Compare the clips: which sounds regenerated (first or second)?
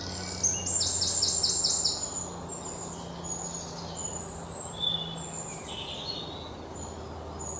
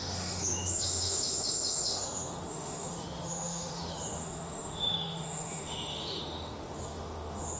second